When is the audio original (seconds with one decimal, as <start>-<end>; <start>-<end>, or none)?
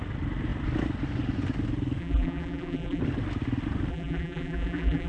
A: 0.0-2.0; 3.0-3.9